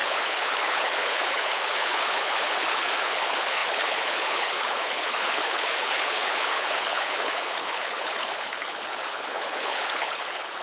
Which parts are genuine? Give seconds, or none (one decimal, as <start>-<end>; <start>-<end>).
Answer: none